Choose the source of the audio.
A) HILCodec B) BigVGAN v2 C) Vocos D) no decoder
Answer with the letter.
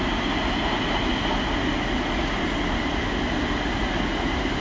D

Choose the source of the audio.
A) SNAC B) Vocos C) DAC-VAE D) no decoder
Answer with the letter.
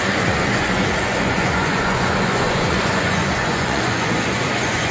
B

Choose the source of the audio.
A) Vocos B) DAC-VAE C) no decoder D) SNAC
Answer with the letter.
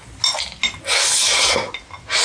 C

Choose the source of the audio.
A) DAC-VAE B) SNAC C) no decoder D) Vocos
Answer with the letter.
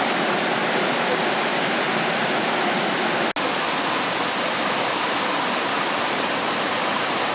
C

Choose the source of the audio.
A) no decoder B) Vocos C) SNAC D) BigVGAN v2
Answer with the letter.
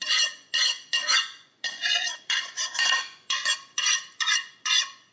B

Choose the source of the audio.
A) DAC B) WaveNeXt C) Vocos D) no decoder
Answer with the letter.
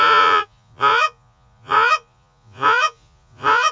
C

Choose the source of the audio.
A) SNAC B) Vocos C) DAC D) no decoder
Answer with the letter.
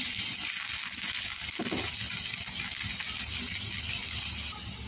D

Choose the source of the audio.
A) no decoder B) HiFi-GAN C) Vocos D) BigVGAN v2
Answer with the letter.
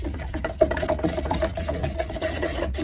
C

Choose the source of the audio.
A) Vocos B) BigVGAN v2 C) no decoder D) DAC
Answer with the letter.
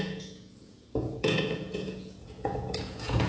A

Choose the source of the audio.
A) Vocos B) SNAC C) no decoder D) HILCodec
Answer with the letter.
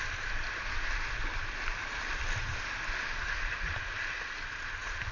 C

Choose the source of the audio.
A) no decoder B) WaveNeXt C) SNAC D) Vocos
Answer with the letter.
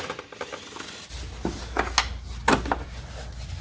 A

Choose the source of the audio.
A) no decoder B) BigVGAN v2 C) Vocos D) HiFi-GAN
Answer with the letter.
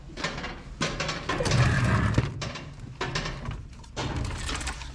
A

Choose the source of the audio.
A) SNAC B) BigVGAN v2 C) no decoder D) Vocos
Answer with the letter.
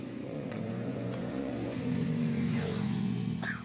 D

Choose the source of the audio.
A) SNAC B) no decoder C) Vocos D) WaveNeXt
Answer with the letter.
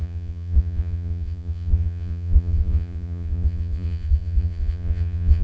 C